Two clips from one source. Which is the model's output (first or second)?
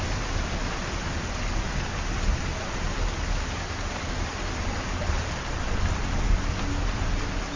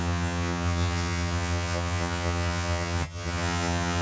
second